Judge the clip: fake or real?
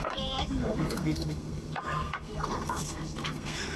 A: fake